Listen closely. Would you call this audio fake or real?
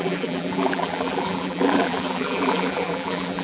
fake